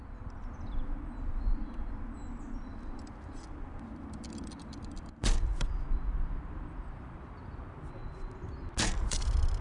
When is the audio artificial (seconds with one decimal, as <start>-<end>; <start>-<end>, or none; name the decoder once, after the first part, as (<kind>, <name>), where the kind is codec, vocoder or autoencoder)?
0.0-8.0 (vocoder, BigVGAN v2); 9.1-9.6